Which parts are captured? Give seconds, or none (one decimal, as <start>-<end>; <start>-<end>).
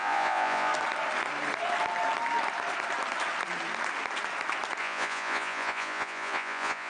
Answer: 0.7-4.8